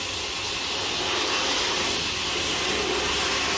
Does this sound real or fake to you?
real